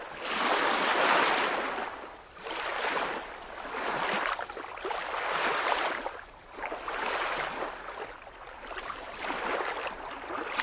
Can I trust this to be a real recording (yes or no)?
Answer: yes